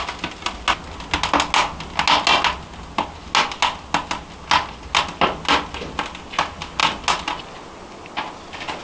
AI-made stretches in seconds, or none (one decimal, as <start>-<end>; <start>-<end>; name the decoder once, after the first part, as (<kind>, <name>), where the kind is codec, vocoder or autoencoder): none